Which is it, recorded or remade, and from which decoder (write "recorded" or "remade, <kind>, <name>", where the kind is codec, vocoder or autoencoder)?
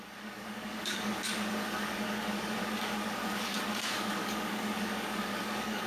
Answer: remade, codec, DAC